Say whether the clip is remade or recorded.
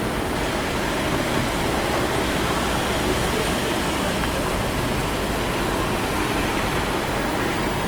recorded